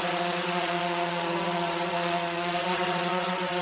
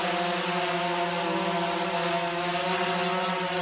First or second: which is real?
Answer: second